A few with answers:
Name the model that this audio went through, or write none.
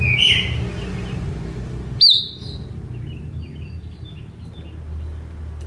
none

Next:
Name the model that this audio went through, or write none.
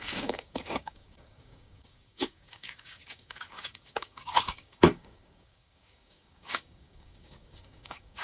codec, DAC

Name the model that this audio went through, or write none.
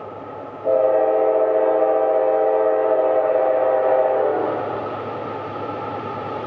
none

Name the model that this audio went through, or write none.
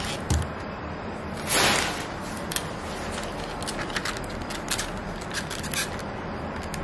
none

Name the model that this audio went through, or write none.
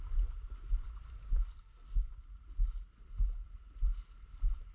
none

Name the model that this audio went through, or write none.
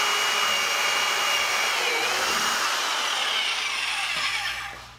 none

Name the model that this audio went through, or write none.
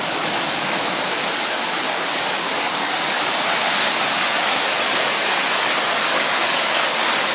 codec, DAC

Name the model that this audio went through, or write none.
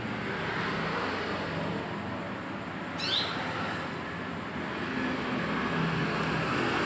none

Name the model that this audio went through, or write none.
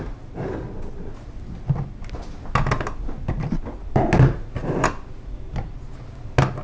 none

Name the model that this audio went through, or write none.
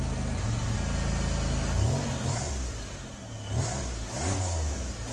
none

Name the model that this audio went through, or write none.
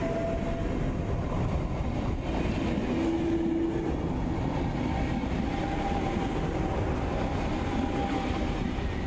none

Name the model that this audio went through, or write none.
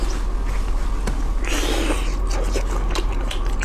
none